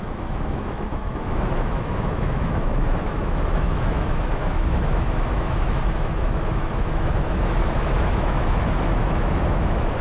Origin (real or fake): fake